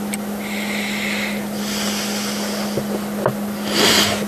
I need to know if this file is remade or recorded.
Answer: recorded